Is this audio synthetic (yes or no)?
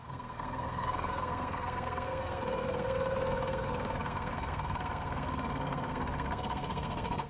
yes